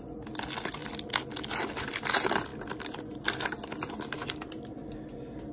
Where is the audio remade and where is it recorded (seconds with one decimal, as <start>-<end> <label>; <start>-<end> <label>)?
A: 0.0-0.8 recorded; 0.8-2.0 remade; 2.0-5.5 recorded